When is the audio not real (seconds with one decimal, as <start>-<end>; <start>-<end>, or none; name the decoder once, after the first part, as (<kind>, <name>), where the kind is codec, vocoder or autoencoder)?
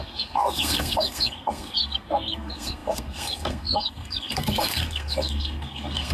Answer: 0.0-6.1 (codec, SNAC)